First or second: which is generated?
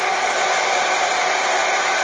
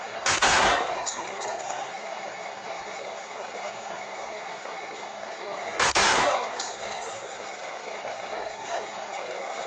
second